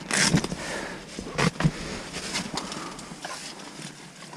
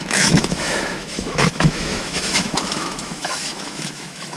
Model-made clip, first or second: second